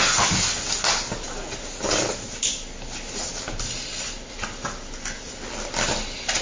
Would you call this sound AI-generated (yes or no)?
no